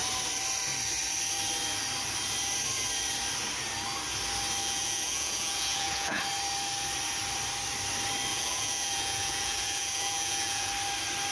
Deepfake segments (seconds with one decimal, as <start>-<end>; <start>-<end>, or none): 4.6-6.2; 8.3-10.7